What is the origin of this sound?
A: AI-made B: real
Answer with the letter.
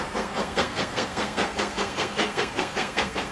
A